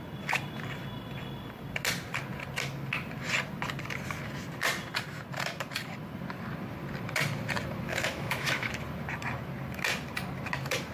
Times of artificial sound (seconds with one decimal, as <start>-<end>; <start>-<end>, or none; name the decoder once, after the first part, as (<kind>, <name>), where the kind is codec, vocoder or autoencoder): 7.9-8.7 (autoencoder, DAC-VAE)